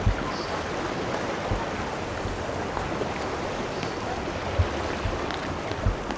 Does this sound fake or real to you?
real